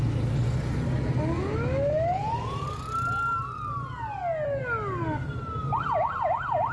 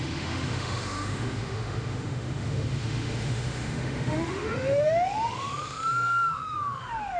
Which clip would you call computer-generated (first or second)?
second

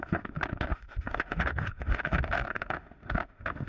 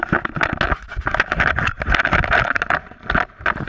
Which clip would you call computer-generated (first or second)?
first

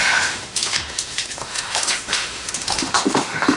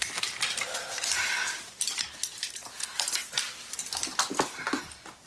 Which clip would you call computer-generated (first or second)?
first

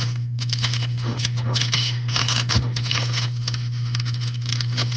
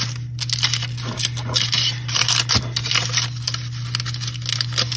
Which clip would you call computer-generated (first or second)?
first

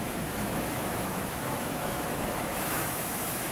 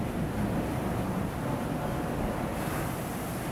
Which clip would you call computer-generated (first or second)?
first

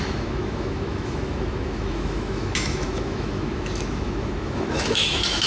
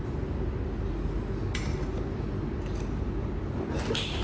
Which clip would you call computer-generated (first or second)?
first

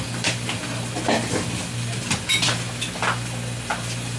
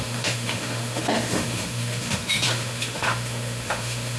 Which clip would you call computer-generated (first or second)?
second